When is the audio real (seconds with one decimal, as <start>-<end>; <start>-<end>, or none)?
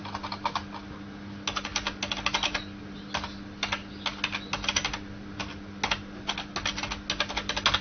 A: 0.0-7.8